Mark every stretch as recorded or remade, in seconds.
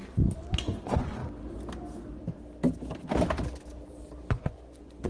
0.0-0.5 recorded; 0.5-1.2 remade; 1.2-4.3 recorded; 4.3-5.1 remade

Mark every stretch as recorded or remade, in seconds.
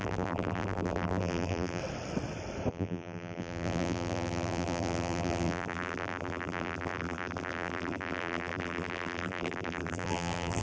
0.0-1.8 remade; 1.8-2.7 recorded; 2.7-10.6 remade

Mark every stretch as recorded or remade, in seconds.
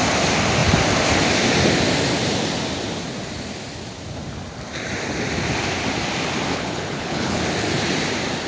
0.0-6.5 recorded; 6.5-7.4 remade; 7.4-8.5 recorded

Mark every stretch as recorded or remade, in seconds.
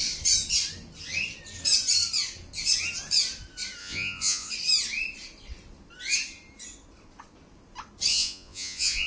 0.0-3.8 recorded; 3.8-4.5 remade; 4.5-8.1 recorded; 8.1-9.1 remade